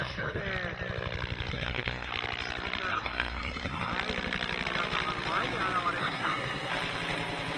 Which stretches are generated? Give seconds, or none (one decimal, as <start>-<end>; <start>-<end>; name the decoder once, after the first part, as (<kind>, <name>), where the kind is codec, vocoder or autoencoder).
0.0-0.4 (codec, SNAC); 1.5-2.1; 2.9-3.9; 6.0-6.7